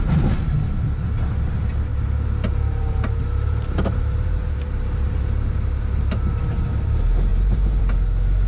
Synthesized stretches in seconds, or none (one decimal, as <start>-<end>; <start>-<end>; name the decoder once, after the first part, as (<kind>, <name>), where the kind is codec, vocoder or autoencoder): 1.9-6.4 (vocoder, BigVGAN v2); 7.3-7.8